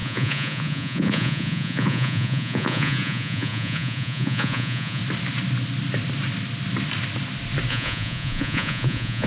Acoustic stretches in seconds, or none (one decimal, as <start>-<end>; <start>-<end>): 5.0-7.7